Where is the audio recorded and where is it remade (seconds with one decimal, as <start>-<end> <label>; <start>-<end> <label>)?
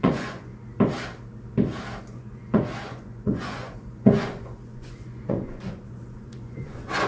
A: 0.0-0.5 remade; 0.5-2.0 recorded; 2.0-7.1 remade